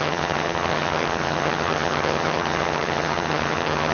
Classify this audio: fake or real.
fake